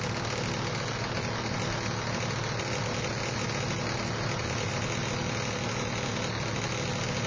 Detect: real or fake real